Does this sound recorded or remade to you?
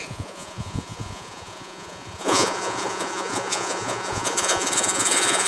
remade